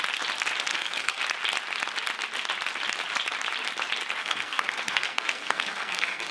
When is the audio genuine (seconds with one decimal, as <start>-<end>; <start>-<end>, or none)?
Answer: 0.0-0.7; 1.2-4.2